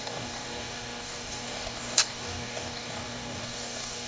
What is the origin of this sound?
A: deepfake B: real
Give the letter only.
A